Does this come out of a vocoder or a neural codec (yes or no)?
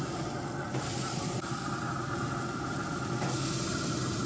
no